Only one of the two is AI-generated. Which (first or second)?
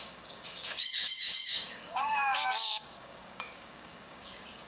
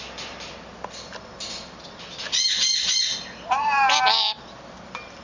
first